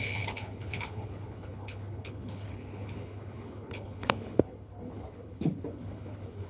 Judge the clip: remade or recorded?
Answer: remade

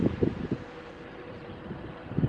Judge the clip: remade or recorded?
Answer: remade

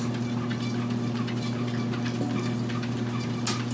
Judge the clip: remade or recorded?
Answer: recorded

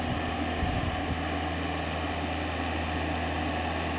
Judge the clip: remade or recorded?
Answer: recorded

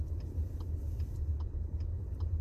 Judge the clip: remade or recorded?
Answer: remade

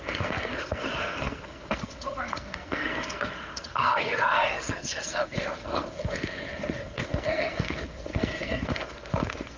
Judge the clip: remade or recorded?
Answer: remade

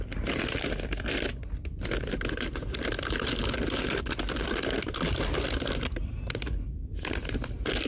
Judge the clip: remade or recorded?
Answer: recorded